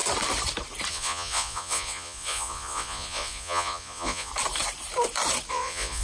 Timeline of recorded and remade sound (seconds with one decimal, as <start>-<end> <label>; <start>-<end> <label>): 0.0-0.9 recorded; 0.9-4.3 remade; 4.3-5.5 recorded; 5.5-6.0 remade